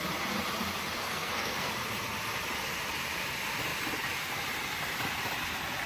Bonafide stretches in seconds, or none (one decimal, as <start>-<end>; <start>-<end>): 0.0-1.0; 1.7-5.9